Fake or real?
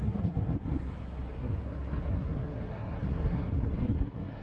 fake